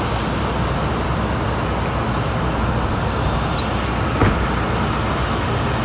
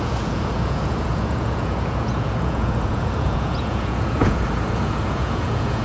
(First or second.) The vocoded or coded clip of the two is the second